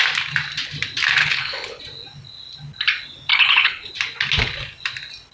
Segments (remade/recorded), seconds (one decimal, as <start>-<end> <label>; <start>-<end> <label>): 0.0-1.2 recorded; 1.2-1.8 remade; 1.8-3.3 recorded; 3.3-3.9 remade; 3.9-5.3 recorded